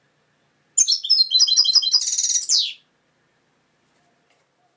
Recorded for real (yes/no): yes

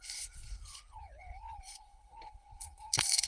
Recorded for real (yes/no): no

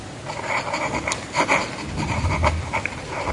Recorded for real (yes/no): yes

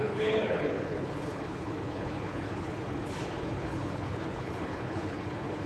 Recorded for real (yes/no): no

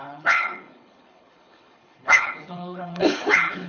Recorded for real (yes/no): no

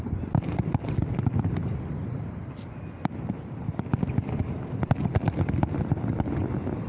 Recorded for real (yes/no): yes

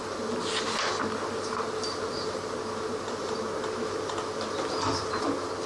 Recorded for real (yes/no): yes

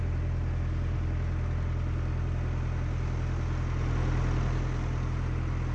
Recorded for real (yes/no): yes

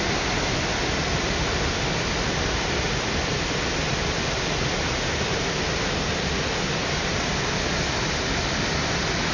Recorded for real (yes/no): yes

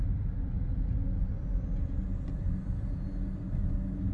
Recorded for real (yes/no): yes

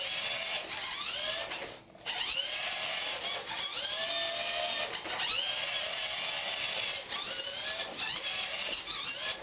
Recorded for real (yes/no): yes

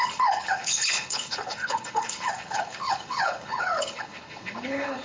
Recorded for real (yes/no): no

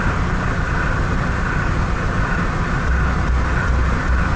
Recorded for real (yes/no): yes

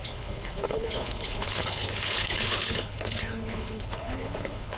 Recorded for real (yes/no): no